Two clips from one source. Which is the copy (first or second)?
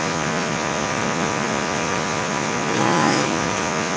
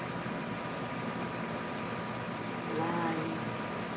first